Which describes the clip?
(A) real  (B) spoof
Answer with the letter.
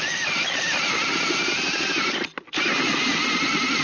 A